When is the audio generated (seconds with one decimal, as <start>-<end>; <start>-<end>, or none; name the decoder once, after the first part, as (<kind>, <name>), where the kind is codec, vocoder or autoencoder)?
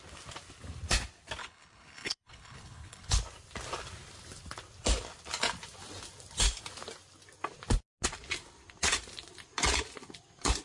1.4-3.2 (codec, HILCodec)